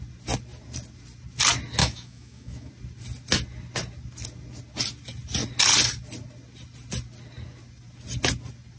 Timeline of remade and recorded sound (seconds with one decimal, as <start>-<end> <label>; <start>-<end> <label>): 0.0-1.8 recorded; 1.8-2.7 remade; 2.7-8.8 recorded